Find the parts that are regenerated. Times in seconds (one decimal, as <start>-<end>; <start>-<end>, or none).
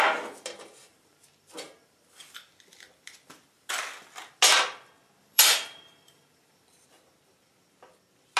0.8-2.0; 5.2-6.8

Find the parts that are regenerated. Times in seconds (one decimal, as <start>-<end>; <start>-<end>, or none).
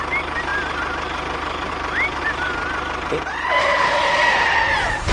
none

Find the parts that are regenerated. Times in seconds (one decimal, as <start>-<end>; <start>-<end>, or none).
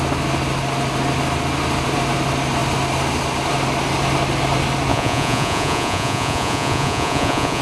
4.9-7.6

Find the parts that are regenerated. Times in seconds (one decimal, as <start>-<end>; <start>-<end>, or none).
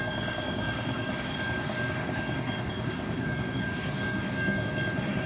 0.0-5.3